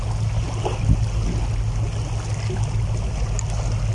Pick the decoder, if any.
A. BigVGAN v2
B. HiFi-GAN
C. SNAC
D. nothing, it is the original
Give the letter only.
D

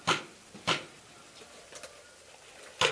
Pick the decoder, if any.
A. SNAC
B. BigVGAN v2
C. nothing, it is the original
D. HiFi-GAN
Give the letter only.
C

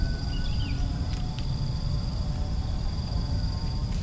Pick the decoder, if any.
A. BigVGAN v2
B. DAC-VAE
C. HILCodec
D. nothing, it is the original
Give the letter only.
A